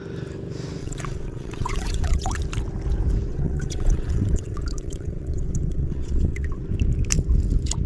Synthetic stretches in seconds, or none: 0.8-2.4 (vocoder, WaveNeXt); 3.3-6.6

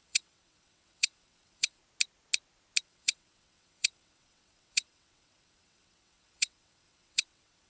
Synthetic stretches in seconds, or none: 0.0-1.8 (vocoder, WaveNeXt); 2.8-7.7

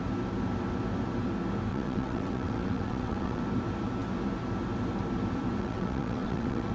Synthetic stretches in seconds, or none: 1.7-3.4 (vocoder, WaveNeXt); 5.6-6.7

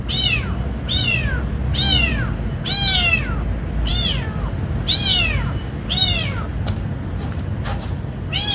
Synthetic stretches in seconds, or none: none